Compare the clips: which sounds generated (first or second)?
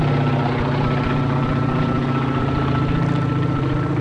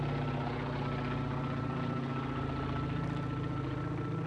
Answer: first